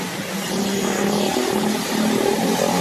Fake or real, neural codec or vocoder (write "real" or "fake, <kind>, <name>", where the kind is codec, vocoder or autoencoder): real